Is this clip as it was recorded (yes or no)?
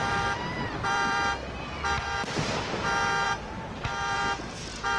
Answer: no